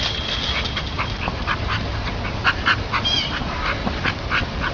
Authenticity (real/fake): real